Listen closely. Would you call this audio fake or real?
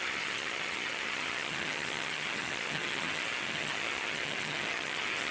fake